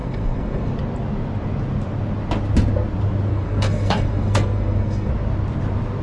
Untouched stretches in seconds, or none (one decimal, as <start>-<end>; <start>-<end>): 0.7-3.3; 5.1-6.0